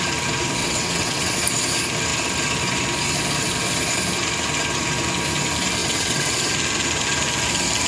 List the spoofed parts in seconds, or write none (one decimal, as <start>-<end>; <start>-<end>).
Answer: 0.6-1.3; 5.8-6.3